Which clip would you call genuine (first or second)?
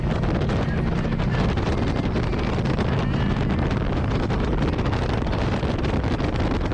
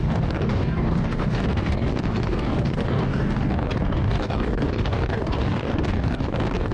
first